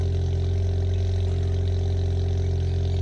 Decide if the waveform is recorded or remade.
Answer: recorded